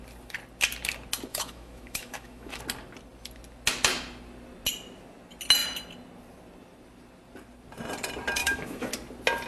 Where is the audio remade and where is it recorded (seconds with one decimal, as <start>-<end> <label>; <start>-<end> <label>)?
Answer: 0.0-1.3 recorded; 1.3-2.6 remade; 2.6-8.4 recorded; 8.4-8.9 remade; 8.9-9.5 recorded